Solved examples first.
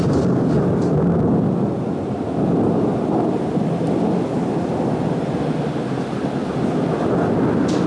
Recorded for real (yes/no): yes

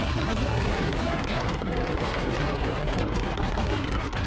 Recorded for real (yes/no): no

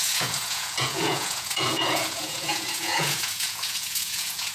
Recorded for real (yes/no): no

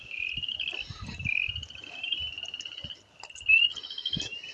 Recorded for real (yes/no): yes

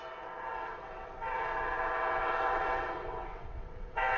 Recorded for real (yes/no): no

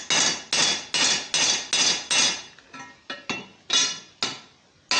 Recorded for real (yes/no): yes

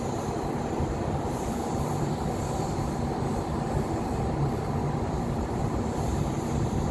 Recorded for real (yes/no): no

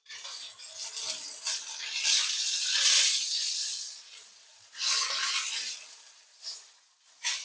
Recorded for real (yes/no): yes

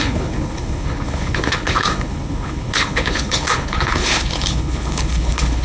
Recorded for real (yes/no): no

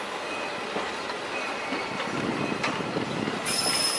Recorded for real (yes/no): yes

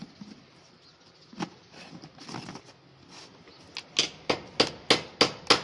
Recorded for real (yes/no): yes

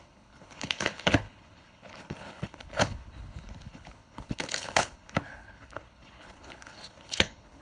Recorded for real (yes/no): no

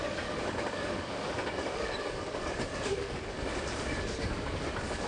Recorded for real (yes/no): no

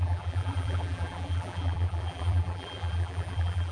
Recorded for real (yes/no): no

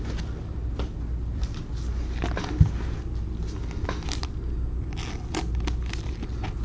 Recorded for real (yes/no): yes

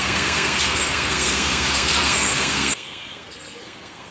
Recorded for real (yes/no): no